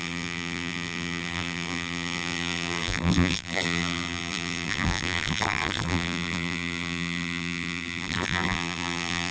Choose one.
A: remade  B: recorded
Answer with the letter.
A